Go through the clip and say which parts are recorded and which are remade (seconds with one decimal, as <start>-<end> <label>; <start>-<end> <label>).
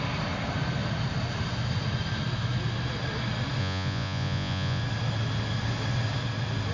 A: 0.0-3.6 recorded; 3.6-4.8 remade; 4.8-6.7 recorded